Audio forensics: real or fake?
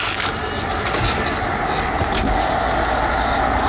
real